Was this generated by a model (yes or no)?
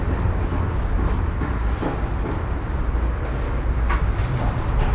no